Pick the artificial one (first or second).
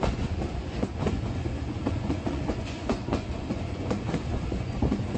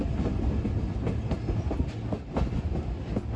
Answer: first